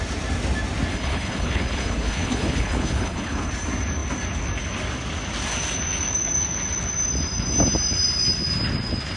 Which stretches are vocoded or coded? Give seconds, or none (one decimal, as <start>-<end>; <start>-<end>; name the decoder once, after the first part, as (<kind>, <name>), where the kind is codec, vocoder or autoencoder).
0.9-3.5 (codec, HILCodec)